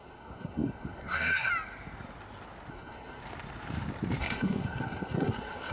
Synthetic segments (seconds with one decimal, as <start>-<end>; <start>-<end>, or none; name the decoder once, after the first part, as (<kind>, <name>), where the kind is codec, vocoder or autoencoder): 0.0-1.5 (codec, SNAC); 2.7-3.2; 4.2-5.7